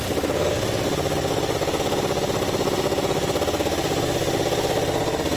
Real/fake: real